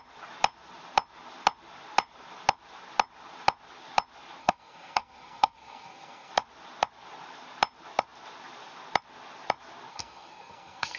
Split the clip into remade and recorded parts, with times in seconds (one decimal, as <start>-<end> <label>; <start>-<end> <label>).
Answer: 0.0-4.4 recorded; 4.4-6.3 remade; 6.3-9.9 recorded; 9.9-11.0 remade